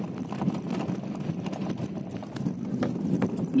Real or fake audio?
real